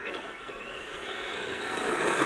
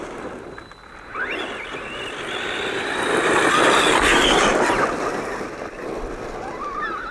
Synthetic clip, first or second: first